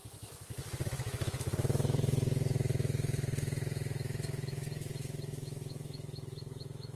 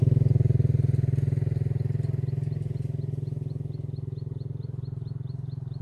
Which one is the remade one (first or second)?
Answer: first